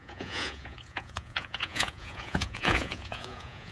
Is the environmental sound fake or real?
fake